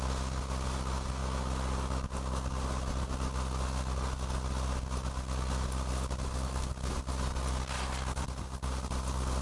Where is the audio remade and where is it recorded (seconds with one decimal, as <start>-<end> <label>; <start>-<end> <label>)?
0.0-9.4 recorded

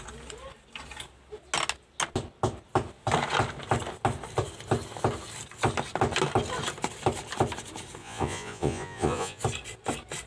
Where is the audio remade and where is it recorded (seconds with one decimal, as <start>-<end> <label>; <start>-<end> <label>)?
0.0-8.0 recorded; 8.0-9.4 remade; 9.4-10.3 recorded

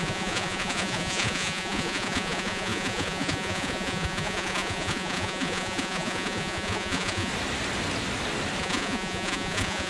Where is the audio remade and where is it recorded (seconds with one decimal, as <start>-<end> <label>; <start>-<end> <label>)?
0.0-7.3 remade; 7.3-8.6 recorded; 8.6-9.9 remade

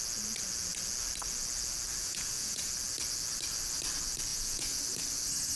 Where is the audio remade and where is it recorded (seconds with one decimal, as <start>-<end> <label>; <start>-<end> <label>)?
0.0-2.0 recorded; 2.0-2.7 remade; 2.7-4.3 recorded; 4.3-4.8 remade; 4.8-5.6 recorded

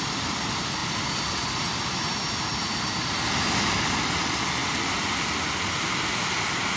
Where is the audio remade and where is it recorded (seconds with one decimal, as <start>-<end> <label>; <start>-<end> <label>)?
0.0-6.8 recorded

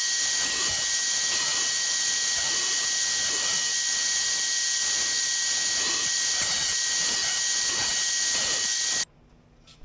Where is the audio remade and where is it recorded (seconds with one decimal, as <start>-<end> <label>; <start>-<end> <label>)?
0.0-9.8 recorded

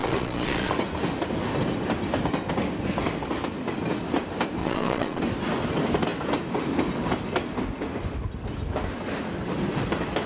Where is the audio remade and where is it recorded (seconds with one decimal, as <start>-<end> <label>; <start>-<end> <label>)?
0.0-0.7 remade; 0.7-4.6 recorded; 4.6-5.2 remade; 5.2-10.3 recorded

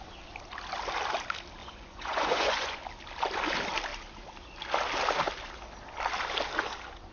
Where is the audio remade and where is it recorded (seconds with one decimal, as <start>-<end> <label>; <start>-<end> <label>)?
0.0-1.6 recorded; 1.6-2.8 remade; 2.8-7.1 recorded